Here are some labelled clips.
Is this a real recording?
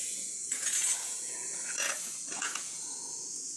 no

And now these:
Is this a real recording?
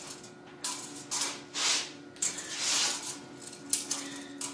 yes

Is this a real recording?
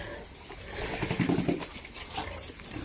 yes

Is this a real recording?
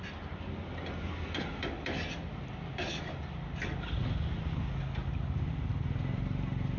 yes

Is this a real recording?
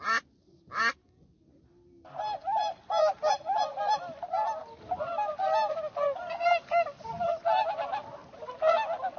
yes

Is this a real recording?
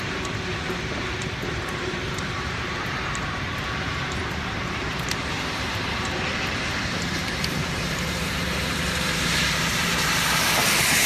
no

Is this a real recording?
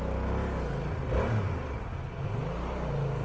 yes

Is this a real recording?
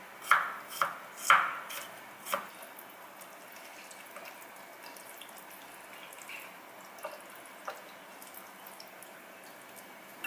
yes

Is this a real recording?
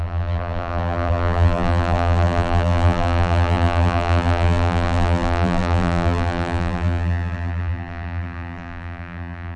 no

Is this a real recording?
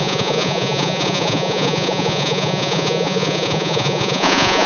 no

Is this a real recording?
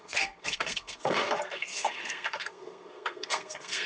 no